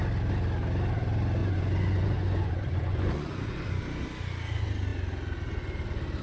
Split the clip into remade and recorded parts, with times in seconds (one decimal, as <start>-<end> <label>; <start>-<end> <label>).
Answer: 0.0-1.4 recorded; 1.4-3.7 remade; 3.7-6.2 recorded